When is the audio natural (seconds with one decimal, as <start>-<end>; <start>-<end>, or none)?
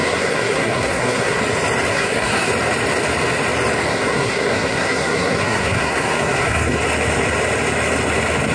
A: 1.4-1.9; 2.5-3.9; 6.8-8.5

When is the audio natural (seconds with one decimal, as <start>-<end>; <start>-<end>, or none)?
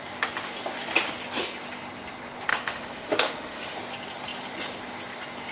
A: 0.0-2.5; 3.8-5.5